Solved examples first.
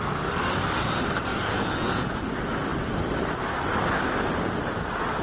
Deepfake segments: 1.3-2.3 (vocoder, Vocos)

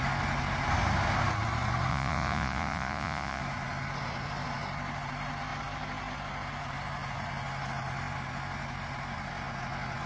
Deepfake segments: 1.9-3.4 (vocoder, Vocos)

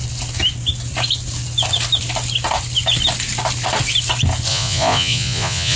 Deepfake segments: 4.5-5.8 (vocoder, Vocos)

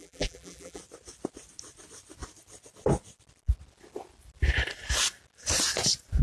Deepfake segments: 0.0-0.8 (vocoder, BigVGAN v2)

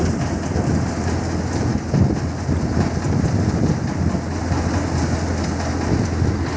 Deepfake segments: none

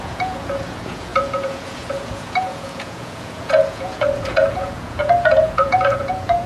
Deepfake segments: 0.0-6.5 (vocoder, Vocos)

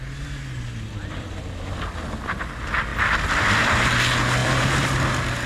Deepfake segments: 2.9-3.9 (vocoder, BigVGAN v2); 4.4-4.9